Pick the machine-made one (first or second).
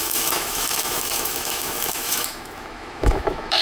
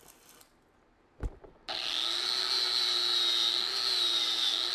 first